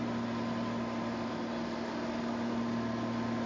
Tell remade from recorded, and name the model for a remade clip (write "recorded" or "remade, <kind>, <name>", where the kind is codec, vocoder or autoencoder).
recorded